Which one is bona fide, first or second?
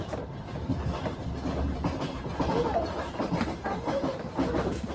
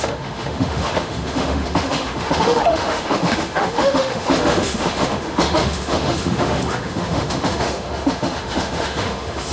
first